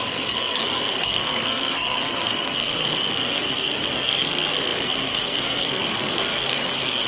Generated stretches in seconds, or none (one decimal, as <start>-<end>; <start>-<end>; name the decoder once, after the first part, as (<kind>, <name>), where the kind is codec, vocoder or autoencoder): 0.0-7.1 (codec, SNAC)